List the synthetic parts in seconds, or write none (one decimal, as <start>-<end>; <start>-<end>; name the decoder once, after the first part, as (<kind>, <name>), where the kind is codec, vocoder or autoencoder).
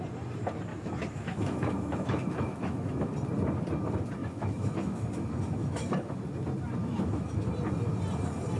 0.7-3.1 (autoencoder, DAC-VAE); 4.2-6.2; 6.8-7.5